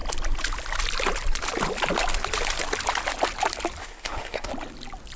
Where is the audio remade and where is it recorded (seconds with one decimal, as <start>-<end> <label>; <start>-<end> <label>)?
0.0-3.8 recorded; 3.8-4.5 remade; 4.5-5.2 recorded